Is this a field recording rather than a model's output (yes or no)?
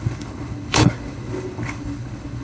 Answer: no